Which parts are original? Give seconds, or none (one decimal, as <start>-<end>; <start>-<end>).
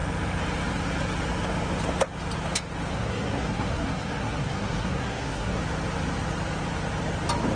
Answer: 0.0-2.9; 5.6-7.6